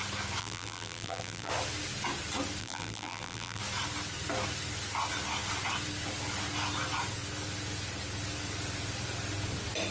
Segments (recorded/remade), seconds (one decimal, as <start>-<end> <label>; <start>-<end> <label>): 0.0-0.4 recorded; 0.4-1.5 remade; 1.5-2.6 recorded; 2.6-3.6 remade; 3.6-9.9 recorded